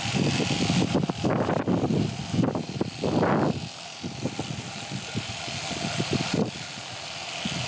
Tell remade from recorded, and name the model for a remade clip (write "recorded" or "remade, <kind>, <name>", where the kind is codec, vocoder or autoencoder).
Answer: recorded